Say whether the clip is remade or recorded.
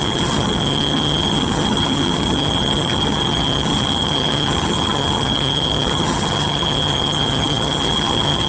remade